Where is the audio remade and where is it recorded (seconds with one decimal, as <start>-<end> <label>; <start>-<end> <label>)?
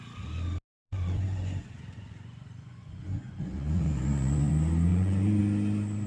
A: 0.0-0.8 recorded; 0.8-4.5 remade; 4.5-4.9 recorded; 4.9-5.4 remade; 5.4-6.1 recorded